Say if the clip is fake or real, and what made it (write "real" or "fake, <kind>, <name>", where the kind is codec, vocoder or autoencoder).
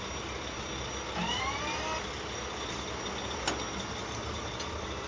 real